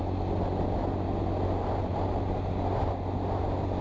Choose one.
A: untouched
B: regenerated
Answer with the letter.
A